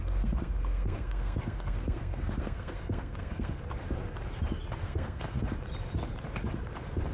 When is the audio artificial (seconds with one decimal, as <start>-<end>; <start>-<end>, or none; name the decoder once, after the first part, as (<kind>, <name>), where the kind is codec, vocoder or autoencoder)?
0.0-3.6 (codec, SNAC); 4.8-5.4

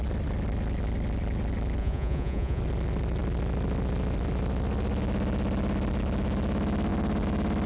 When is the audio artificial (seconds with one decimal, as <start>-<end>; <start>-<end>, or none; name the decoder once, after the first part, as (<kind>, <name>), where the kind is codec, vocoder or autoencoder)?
1.8-2.6 (vocoder, Vocos)

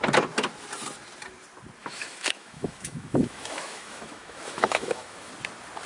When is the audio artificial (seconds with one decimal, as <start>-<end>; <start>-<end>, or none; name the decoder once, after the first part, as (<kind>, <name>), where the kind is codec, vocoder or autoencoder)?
1.8-5.3 (autoencoder, DAC-VAE)

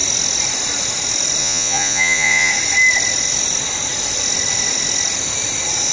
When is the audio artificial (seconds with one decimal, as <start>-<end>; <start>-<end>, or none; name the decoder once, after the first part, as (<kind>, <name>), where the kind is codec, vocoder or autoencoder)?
1.4-2.5 (vocoder, Vocos)

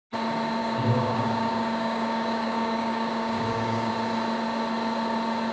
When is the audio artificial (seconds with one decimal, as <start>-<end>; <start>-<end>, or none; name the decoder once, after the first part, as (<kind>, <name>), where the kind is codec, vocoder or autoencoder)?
0.6-3.9 (codec, DAC)